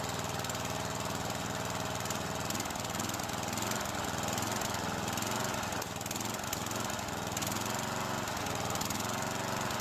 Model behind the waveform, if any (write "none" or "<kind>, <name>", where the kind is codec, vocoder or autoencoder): none